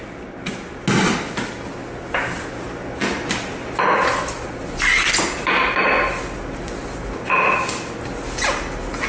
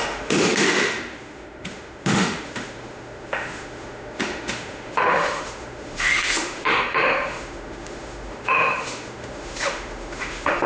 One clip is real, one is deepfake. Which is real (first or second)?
first